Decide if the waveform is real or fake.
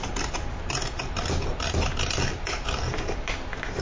real